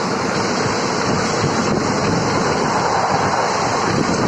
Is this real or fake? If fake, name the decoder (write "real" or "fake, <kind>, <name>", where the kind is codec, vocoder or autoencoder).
real